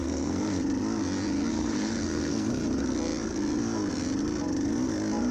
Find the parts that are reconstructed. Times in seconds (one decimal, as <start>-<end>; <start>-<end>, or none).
0.0-0.6; 1.5-2.5